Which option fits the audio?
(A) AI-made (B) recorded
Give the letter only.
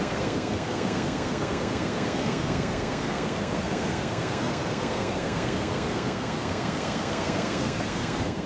A